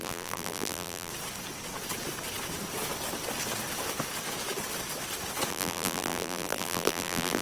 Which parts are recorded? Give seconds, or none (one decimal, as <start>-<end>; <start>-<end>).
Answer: 1.1-5.5